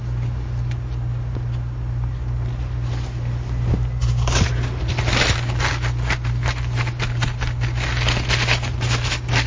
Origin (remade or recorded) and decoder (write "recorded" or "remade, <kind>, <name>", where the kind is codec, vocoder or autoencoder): recorded